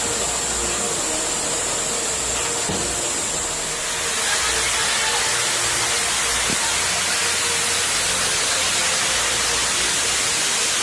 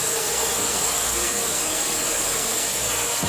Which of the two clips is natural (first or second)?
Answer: first